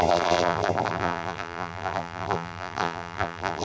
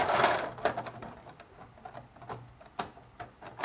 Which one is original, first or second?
second